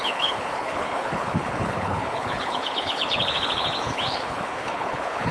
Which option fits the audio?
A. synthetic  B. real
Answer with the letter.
A